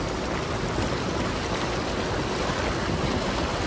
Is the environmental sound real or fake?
real